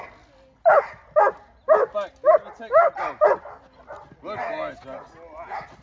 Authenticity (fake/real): real